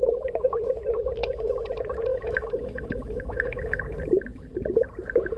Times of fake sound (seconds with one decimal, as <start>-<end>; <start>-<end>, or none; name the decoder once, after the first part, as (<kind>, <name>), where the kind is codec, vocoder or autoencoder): 1.2-1.7 (autoencoder, DAC-VAE); 2.1-3.8